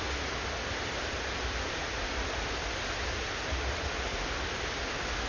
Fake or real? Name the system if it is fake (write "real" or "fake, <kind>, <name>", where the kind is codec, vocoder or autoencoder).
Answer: real